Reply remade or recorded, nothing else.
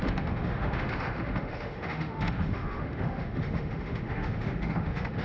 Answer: remade